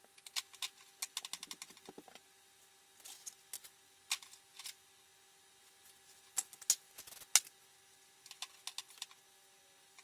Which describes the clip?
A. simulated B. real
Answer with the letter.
B